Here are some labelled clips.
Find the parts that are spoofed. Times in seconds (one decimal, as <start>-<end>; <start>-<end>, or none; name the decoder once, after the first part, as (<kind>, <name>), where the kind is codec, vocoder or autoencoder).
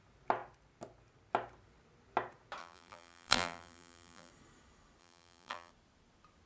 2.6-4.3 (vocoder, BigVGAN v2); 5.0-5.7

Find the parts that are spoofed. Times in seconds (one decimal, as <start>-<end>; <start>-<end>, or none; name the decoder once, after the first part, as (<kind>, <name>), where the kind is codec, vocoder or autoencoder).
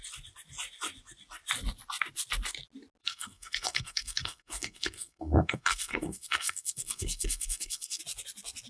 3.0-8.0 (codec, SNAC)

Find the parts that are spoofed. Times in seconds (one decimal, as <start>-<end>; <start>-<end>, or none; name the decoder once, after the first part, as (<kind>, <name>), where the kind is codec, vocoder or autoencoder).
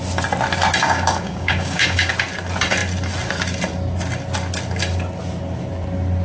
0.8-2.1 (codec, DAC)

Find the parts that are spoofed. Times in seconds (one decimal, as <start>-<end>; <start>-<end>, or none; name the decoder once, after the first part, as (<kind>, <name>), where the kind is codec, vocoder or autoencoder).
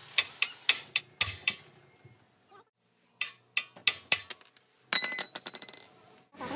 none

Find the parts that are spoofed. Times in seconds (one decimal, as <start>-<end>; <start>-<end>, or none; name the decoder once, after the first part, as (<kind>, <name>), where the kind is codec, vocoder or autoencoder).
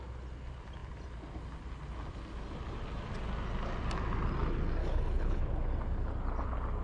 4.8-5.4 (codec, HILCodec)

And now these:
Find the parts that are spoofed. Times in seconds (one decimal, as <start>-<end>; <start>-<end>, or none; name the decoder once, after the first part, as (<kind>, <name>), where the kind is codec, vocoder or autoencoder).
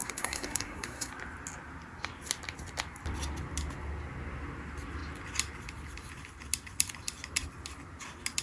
0.0-1.1 (codec, SNAC)